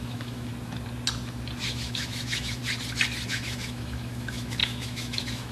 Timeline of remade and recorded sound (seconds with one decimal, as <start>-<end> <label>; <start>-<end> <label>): 0.0-0.5 remade; 0.5-1.7 recorded; 1.7-2.6 remade; 2.6-3.3 recorded; 3.3-5.5 remade